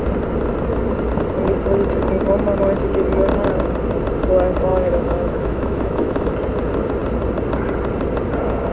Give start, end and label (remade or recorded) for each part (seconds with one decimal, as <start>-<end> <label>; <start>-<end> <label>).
0.0-4.7 recorded; 4.7-6.3 remade; 6.3-8.7 recorded